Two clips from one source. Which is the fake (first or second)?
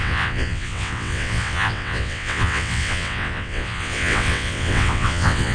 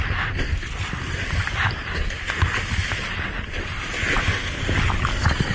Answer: first